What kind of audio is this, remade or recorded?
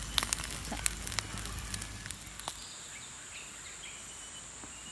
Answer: recorded